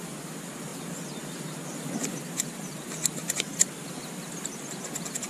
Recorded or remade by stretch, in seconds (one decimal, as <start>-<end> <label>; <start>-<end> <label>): 0.0-5.3 recorded